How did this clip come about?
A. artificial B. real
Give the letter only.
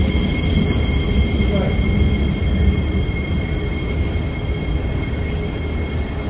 B